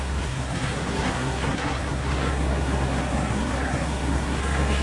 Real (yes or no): no